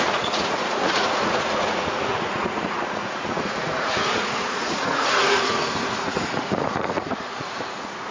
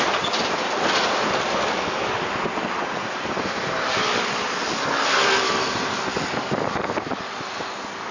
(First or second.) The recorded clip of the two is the second